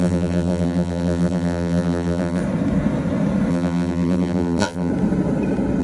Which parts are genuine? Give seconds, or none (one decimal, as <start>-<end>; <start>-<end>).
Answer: 2.4-3.5; 4.9-5.8